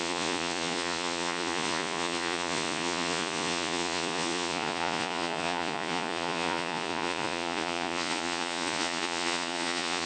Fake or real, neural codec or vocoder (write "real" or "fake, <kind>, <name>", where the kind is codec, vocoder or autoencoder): fake, vocoder, Vocos